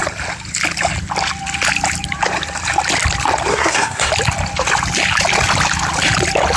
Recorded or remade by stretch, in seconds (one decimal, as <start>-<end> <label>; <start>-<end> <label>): 0.0-3.5 recorded; 3.5-4.1 remade; 4.1-6.6 recorded